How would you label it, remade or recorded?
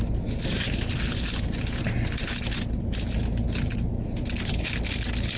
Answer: recorded